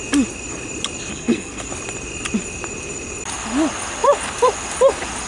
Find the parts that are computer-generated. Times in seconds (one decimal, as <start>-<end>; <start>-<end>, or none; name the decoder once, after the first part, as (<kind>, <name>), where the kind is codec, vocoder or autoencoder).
1.1-1.7 (codec, SNAC)